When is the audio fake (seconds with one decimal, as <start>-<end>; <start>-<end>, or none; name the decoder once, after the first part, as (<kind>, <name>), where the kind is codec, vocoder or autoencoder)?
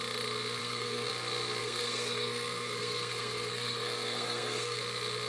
0.6-1.1 (codec, SNAC); 1.6-4.8